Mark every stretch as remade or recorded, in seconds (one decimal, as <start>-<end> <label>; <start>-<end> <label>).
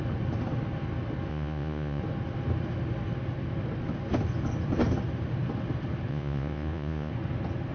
0.0-1.3 recorded; 1.3-2.0 remade; 2.0-6.1 recorded; 6.1-7.1 remade; 7.1-7.7 recorded